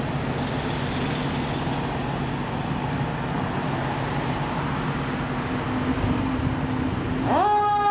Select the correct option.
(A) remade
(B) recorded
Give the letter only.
B